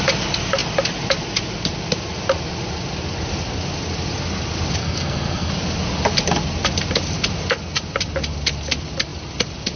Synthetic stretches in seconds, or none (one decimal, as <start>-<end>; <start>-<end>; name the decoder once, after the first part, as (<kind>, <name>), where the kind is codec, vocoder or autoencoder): 4.8-5.5 (codec, SNAC)